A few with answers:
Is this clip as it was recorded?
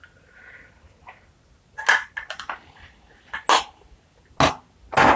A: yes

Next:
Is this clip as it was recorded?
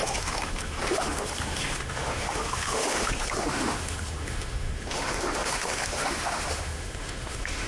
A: no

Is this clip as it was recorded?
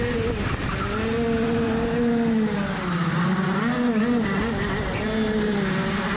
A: yes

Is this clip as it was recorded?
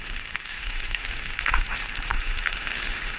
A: no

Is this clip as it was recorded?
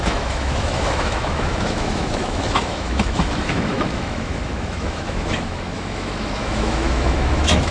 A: no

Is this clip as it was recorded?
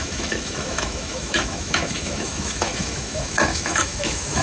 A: no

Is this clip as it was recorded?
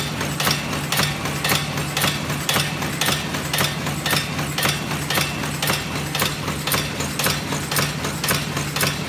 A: yes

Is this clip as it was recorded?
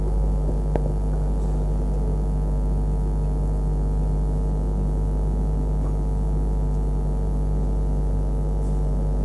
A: yes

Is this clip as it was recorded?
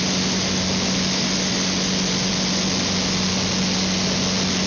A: yes